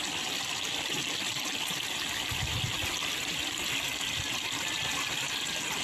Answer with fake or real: real